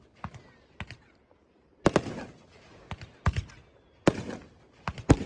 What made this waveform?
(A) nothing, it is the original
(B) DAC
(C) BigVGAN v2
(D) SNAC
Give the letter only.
A